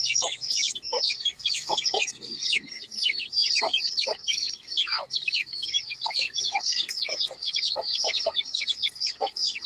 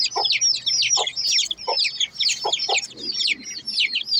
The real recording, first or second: second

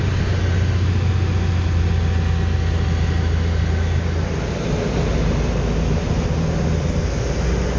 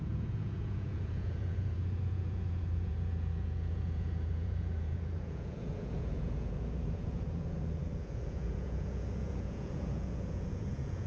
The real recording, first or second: first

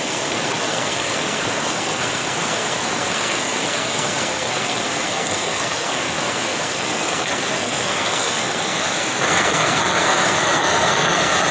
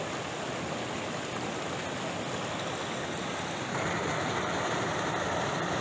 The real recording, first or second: second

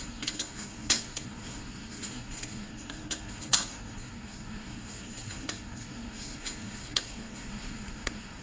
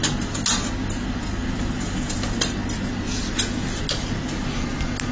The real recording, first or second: second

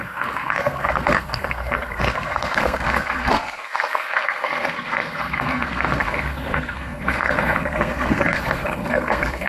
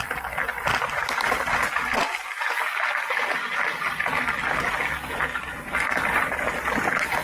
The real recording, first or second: second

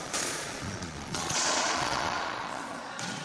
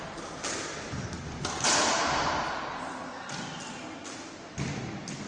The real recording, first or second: second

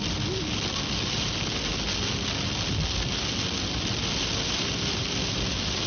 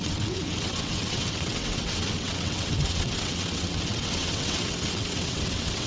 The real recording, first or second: first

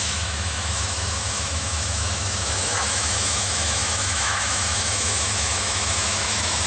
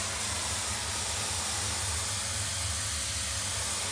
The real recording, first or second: second